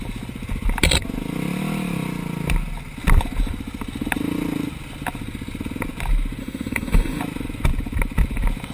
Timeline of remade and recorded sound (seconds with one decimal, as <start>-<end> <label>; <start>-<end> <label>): 0.0-6.4 recorded; 6.4-7.2 remade; 7.2-8.7 recorded